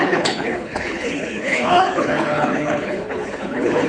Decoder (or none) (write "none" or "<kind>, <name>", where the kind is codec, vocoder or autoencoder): codec, HILCodec